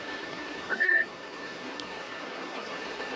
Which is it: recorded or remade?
remade